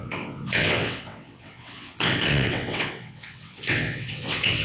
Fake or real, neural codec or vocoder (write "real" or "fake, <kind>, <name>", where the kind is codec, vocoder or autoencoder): fake, vocoder, WaveNeXt